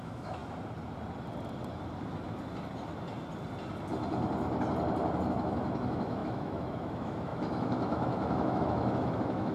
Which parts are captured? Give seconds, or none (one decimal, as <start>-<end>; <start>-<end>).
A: 0.4-5.3